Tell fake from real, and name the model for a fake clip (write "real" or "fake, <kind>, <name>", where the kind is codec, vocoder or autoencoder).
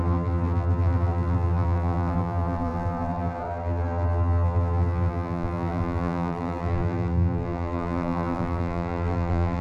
fake, vocoder, BigVGAN v2